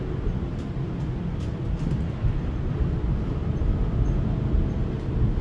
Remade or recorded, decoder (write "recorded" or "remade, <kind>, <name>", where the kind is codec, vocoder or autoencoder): recorded